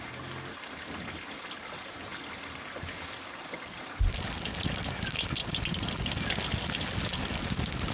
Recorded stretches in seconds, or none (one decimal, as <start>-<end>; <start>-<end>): 0.0-7.9